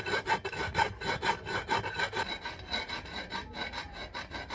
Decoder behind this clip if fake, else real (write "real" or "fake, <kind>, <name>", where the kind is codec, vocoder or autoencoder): real